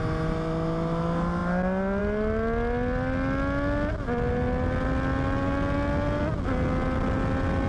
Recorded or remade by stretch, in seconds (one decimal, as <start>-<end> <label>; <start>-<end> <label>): 0.0-7.7 recorded